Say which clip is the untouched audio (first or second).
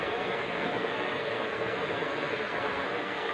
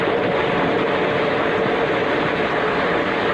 second